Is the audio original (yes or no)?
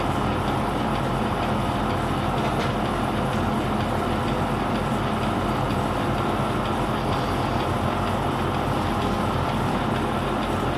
yes